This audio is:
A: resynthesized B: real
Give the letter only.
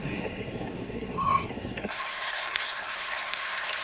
A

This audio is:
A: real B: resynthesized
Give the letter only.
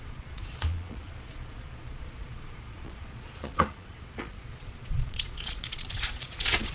B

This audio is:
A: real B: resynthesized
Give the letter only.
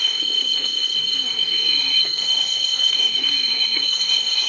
B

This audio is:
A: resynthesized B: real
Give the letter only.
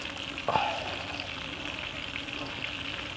B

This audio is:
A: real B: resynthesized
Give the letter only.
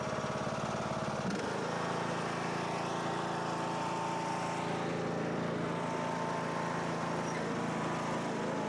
A